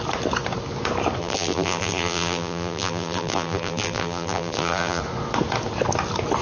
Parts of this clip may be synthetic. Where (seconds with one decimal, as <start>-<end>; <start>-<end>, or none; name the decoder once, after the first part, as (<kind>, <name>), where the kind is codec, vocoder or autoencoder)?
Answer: 1.2-5.0 (vocoder, BigVGAN v2)

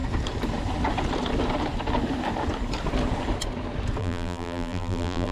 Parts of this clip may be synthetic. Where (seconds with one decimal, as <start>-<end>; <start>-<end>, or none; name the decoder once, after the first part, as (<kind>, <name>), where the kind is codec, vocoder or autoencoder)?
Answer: 4.0-5.3 (vocoder, BigVGAN v2)

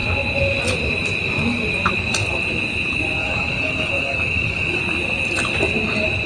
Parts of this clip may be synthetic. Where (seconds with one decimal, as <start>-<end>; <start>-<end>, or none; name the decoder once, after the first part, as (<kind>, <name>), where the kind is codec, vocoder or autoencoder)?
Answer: 3.2-4.8 (codec, DAC)

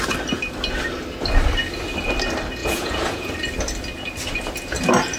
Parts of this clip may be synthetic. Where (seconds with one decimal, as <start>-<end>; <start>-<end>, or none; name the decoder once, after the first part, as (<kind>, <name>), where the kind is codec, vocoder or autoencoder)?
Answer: 2.6-3.3 (vocoder, Vocos)